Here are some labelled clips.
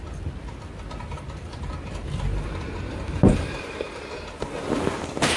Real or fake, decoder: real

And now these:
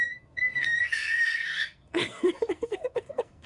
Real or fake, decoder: fake, codec, SNAC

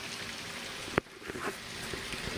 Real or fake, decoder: real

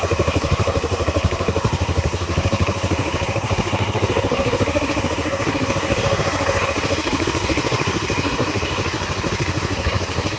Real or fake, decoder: fake, codec, SNAC